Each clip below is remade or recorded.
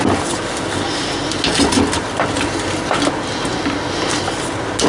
recorded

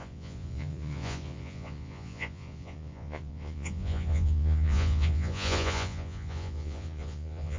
remade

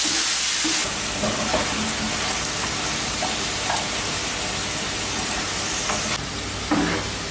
recorded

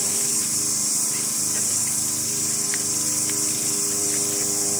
recorded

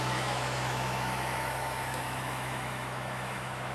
remade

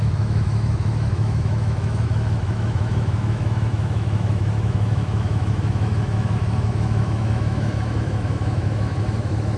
remade